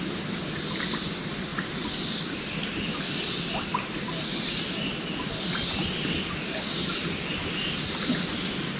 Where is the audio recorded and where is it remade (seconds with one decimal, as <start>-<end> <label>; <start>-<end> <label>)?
0.0-3.7 remade; 3.7-7.4 recorded; 7.4-8.8 remade